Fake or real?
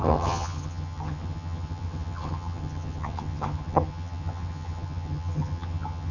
fake